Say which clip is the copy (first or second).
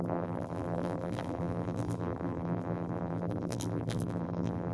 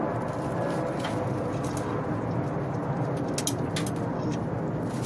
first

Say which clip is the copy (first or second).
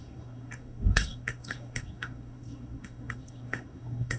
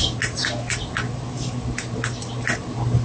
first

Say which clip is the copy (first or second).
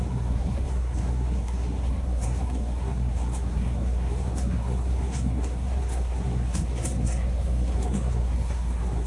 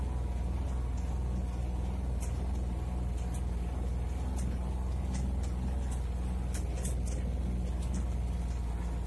first